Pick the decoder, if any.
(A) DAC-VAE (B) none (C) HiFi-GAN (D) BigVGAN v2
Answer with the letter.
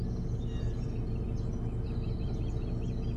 B